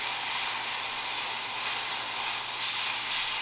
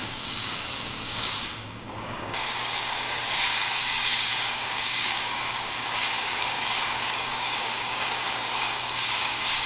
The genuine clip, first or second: first